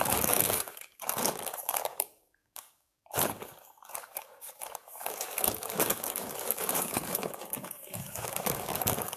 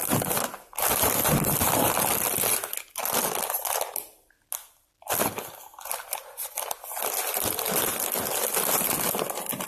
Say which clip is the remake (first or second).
first